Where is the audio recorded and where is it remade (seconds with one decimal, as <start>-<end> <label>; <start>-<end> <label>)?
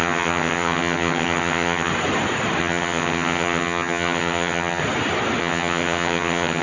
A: 0.0-1.9 remade; 1.9-2.6 recorded; 2.6-4.8 remade; 4.8-5.4 recorded; 5.4-6.6 remade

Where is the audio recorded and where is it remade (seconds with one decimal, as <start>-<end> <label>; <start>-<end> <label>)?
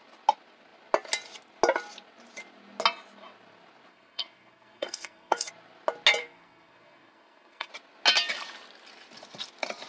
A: 0.0-3.9 recorded; 3.9-5.5 remade; 5.5-6.2 recorded; 6.2-7.7 remade; 7.7-9.9 recorded